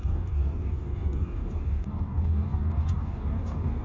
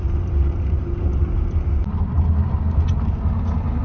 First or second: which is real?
second